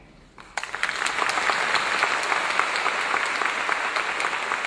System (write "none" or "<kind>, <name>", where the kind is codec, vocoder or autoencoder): none